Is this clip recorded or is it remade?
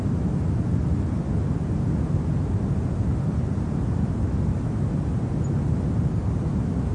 recorded